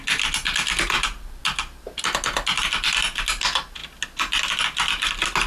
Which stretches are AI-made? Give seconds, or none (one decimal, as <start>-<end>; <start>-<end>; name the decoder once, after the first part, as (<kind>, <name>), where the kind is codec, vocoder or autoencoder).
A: none